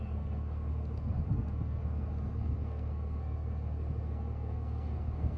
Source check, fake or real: fake